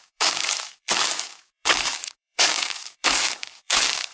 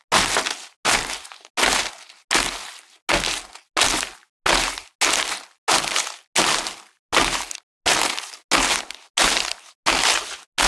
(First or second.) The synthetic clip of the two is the first